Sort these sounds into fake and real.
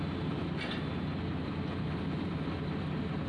real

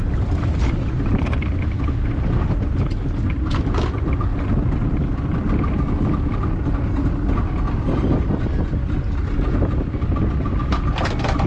real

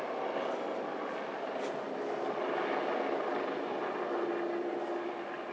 real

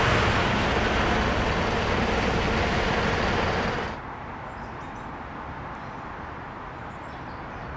real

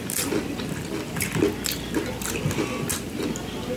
real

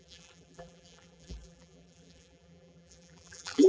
fake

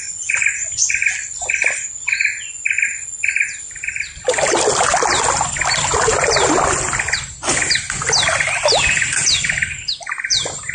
real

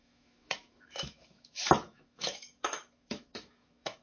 fake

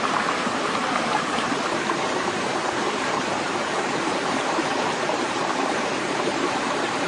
fake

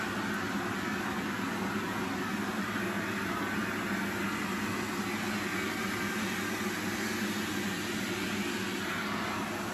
real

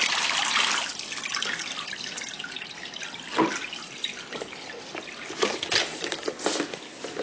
real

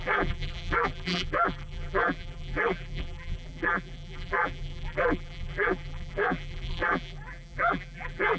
fake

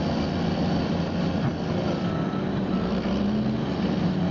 real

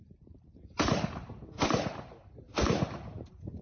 fake